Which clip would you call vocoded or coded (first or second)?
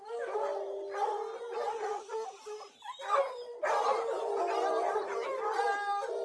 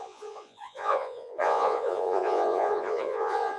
second